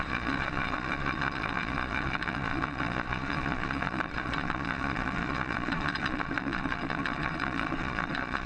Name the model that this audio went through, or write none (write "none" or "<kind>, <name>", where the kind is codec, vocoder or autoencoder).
vocoder, Vocos